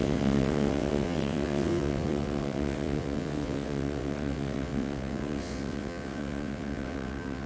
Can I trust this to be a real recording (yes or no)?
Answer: no